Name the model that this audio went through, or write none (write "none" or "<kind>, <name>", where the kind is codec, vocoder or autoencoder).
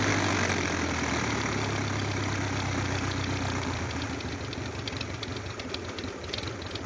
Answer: none